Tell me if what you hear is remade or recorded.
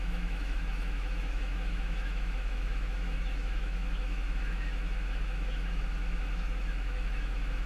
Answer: remade